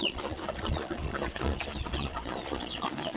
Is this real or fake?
fake